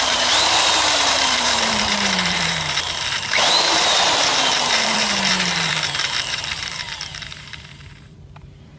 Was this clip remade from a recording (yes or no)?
yes